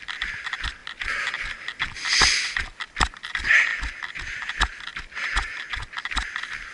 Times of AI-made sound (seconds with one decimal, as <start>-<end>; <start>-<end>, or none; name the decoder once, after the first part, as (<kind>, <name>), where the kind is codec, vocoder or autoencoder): 0.0-0.8 (vocoder, BigVGAN v2); 2.2-3.7; 5.0-5.4